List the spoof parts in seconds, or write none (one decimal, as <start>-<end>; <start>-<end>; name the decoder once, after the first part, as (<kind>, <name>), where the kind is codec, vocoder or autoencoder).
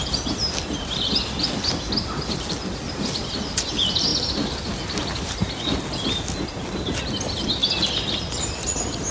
none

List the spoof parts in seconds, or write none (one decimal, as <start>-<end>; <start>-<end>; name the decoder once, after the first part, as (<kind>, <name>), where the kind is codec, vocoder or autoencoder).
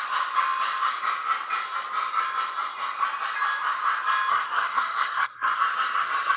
4.3-5.6 (codec, SNAC)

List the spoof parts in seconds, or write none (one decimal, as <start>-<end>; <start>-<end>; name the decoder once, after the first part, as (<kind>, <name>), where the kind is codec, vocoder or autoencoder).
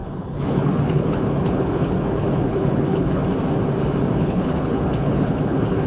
0.0-3.2 (codec, HILCodec); 4.2-5.9